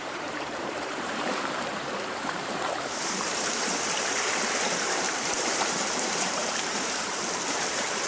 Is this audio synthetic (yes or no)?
yes